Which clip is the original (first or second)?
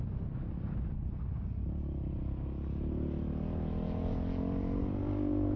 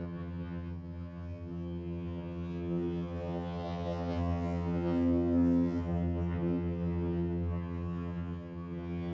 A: first